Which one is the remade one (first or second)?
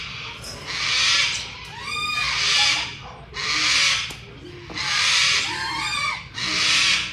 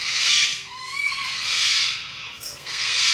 second